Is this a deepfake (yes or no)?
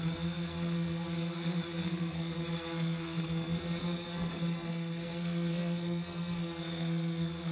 yes